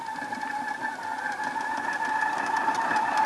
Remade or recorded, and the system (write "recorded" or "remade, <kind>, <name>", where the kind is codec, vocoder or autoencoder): recorded